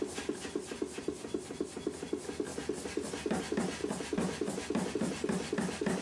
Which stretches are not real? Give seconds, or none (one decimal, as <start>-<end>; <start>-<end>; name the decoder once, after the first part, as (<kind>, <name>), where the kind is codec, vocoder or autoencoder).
none